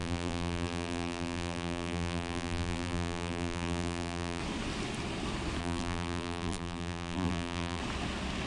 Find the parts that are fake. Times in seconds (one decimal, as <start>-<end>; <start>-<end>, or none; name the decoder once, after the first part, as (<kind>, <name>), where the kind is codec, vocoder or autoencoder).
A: 0.0-4.4 (vocoder, BigVGAN v2); 5.6-7.8